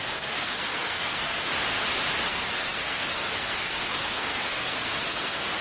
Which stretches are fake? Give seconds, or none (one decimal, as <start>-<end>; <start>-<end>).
0.0-1.5; 2.3-5.6